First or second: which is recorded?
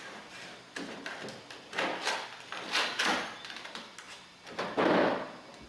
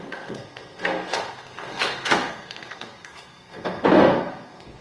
first